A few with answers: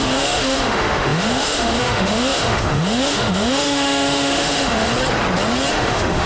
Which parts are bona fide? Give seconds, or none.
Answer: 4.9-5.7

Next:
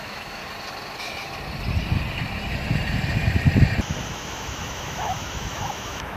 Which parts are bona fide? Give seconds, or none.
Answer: 0.4-4.1

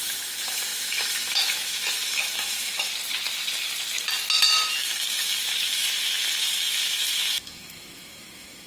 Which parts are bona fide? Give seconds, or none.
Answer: 2.9-4.7

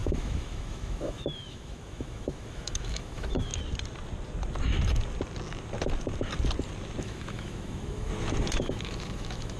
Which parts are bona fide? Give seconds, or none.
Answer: 3.5-7.0; 8.1-8.6

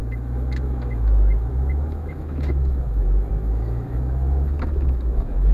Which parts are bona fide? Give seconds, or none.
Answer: none

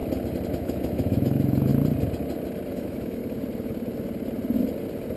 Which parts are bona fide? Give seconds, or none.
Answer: 0.0-0.5; 1.7-2.7; 3.2-5.2

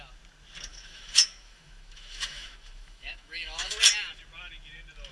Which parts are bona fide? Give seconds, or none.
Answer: 0.0-0.7; 3.8-5.1